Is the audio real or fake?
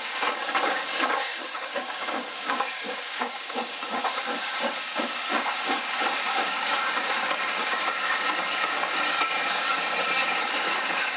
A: fake